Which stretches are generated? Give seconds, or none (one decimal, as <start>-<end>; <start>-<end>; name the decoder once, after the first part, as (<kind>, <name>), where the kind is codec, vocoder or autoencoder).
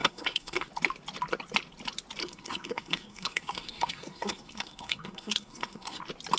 0.0-0.7 (codec, SNAC); 2.2-6.0